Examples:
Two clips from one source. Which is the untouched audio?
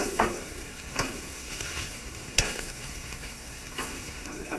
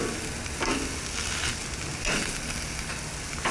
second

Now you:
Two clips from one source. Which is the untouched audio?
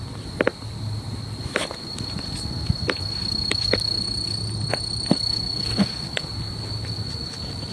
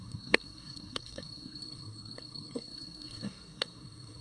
first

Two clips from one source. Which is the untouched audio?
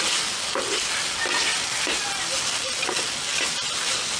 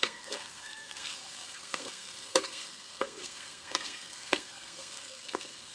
first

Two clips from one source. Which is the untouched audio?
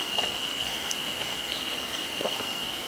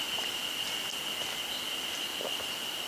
second